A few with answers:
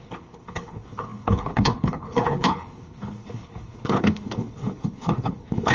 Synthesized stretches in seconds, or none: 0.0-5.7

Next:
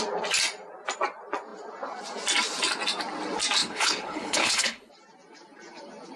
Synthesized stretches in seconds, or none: 3.6-4.9

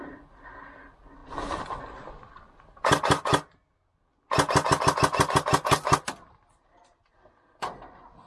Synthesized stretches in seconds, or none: none